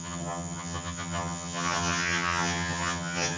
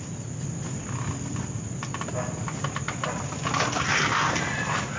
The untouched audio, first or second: second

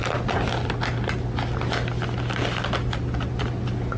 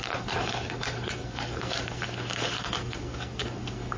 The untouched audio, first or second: first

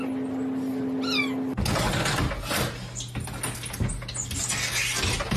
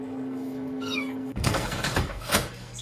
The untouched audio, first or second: first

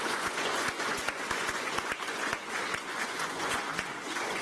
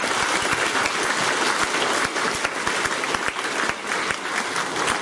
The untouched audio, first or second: second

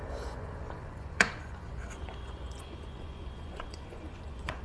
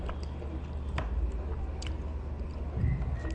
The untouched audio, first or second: second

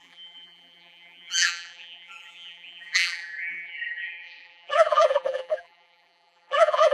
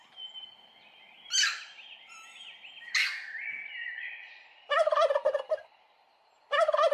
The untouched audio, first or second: second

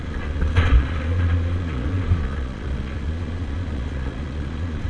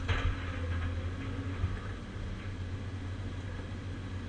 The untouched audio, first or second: second